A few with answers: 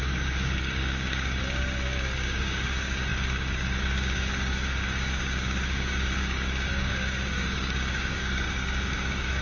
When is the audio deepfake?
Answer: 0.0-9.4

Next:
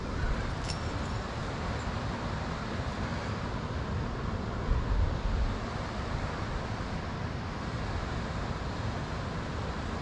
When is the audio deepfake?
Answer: none

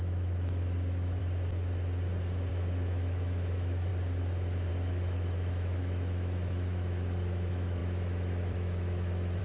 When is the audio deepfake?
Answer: 0.0-1.2; 2.5-3.9; 4.7-9.4